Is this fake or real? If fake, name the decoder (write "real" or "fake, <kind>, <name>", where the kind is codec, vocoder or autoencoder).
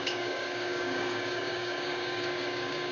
fake, codec, DAC